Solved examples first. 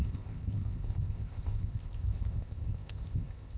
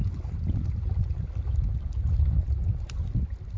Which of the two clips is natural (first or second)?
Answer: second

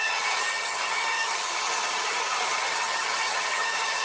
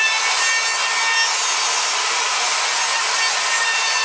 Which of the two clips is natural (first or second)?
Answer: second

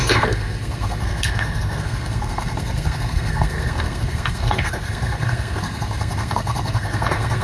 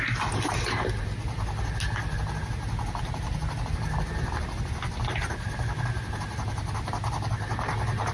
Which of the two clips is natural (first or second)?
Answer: second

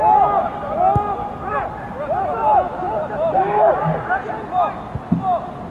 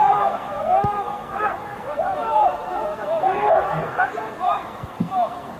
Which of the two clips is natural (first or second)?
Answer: first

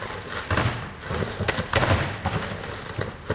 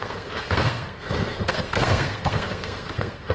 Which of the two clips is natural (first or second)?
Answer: first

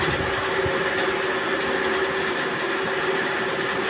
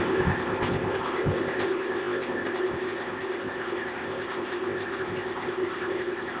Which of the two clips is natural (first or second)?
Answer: first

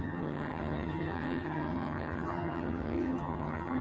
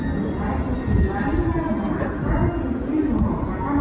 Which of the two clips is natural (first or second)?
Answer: second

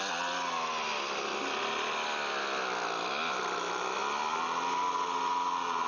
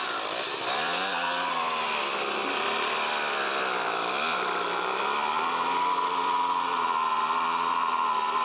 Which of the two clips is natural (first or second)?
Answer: first